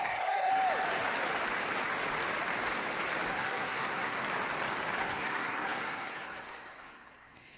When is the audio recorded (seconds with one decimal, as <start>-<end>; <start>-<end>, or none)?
0.5-3.3; 4.2-5.0